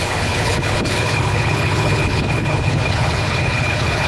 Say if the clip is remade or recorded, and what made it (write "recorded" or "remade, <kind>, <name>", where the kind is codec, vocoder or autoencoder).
remade, codec, HILCodec